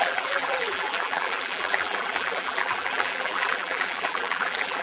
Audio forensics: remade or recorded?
remade